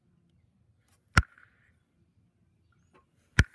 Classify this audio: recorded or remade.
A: recorded